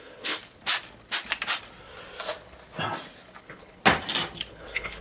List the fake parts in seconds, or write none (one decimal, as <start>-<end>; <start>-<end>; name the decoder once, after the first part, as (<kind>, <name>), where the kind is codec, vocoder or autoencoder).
0.0-0.4 (codec, HILCodec); 3.4-3.8; 4.5-5.0